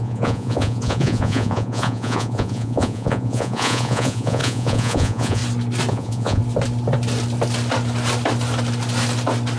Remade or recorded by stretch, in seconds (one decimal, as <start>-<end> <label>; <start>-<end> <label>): 0.0-5.4 remade; 5.4-5.9 recorded; 5.9-6.4 remade; 6.4-9.6 recorded